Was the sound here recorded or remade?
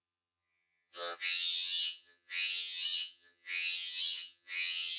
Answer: remade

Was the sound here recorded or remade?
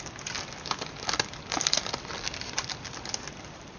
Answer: recorded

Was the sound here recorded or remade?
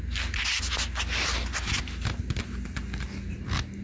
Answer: recorded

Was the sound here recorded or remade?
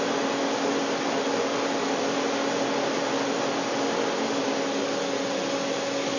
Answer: recorded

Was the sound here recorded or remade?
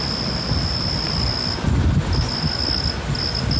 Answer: recorded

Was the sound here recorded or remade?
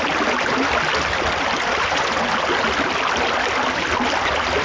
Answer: recorded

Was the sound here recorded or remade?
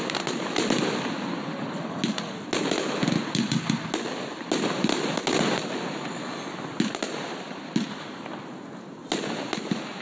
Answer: recorded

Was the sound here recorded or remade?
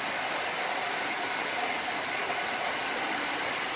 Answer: recorded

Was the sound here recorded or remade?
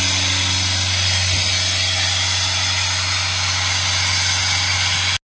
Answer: recorded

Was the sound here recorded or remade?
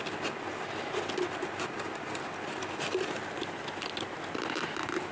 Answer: recorded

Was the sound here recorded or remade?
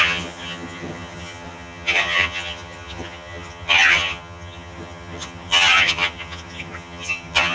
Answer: remade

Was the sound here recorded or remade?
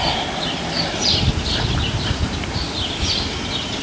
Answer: recorded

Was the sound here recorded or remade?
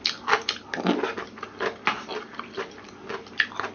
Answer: recorded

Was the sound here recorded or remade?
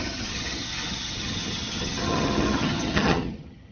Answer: remade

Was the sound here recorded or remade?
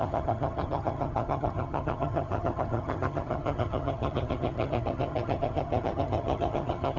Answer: remade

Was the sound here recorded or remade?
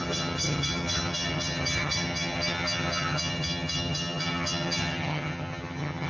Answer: remade